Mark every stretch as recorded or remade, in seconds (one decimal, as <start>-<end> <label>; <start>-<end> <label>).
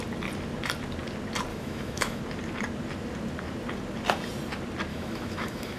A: 0.0-1.5 recorded; 1.5-2.2 remade; 2.2-4.9 recorded; 4.9-5.8 remade